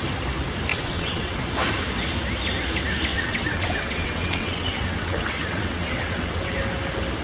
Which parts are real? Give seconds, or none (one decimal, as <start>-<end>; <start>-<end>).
0.0-0.7; 1.4-3.1; 6.6-7.2

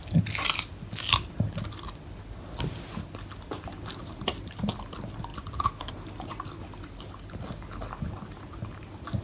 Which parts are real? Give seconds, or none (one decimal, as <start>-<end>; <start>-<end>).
0.0-9.2

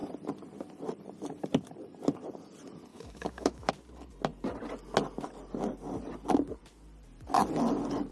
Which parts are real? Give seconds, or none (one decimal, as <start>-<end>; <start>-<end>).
0.0-2.9; 3.7-8.1

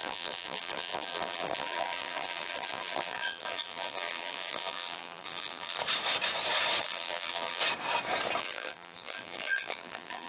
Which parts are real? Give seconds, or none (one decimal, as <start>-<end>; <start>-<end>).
5.8-6.8; 7.6-8.4

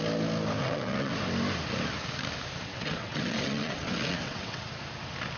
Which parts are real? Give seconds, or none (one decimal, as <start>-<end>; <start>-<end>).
0.0-0.6; 1.1-2.7; 4.6-5.4

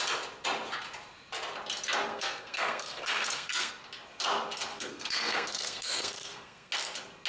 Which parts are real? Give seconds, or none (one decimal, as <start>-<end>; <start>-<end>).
0.0-2.1; 3.7-4.7; 6.7-7.3

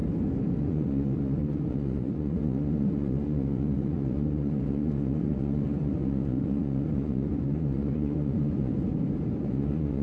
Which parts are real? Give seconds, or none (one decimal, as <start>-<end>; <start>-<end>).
0.0-0.6; 8.7-9.4